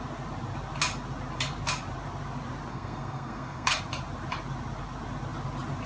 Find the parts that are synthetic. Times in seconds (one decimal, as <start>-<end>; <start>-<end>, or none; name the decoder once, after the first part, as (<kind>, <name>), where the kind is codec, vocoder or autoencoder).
2.7-3.8 (codec, SNAC)